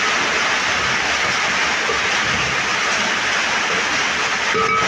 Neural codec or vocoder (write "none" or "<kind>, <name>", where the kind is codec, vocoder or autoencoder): none